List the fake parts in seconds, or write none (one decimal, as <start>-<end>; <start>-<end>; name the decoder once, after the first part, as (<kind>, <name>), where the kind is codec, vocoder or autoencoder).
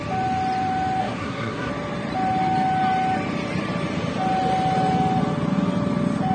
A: 1.0-1.7 (codec, SNAC)